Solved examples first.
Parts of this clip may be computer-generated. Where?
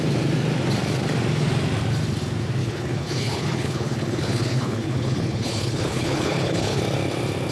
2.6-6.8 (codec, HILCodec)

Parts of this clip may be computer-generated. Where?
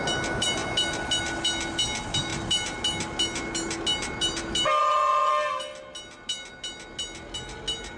4.8-5.3 (vocoder, Vocos)